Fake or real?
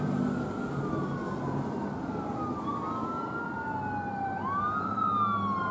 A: real